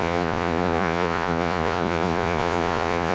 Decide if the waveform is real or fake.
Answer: fake